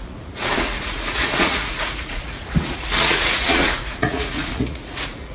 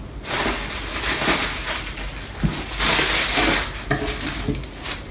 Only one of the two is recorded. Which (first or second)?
second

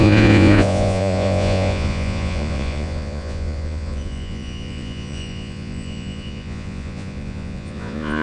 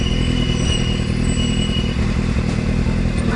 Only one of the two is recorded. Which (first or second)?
second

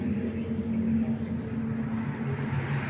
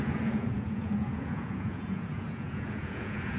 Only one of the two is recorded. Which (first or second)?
first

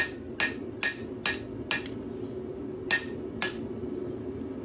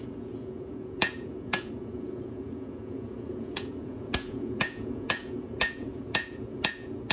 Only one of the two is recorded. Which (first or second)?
first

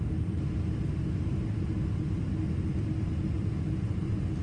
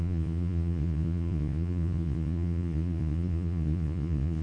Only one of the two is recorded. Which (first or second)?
first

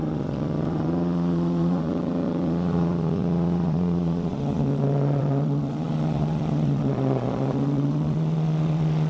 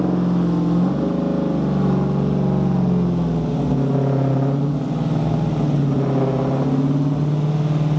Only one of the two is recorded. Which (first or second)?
second